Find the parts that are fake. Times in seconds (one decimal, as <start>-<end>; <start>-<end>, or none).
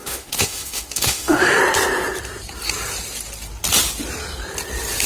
0.0-1.6